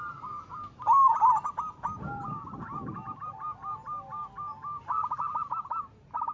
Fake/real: real